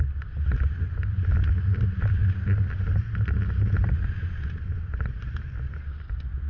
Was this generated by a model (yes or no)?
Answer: no